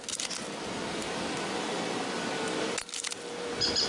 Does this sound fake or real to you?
real